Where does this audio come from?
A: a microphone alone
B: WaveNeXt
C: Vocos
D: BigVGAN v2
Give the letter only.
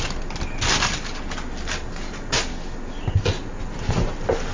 A